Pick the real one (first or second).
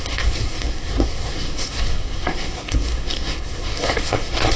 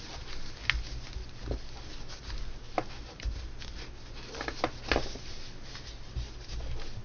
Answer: second